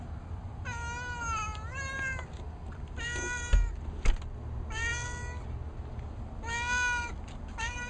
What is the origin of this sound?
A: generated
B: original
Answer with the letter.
B